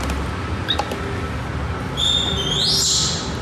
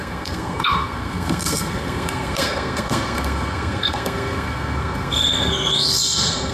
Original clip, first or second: first